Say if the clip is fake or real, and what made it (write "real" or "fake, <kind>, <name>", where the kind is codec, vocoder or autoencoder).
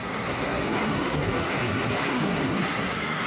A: fake, codec, SNAC